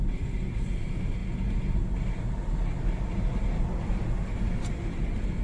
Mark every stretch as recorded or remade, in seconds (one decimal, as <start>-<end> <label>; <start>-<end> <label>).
0.0-5.4 recorded